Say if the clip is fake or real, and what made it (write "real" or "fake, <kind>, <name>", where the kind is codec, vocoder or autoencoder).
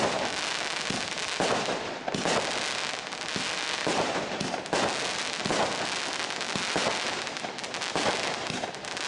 real